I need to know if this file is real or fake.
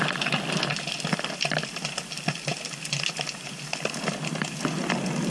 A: real